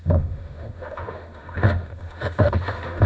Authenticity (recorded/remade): remade